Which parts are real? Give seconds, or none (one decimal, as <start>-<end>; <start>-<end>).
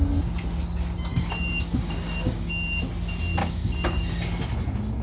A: 0.0-1.1; 2.8-3.4; 4.1-5.0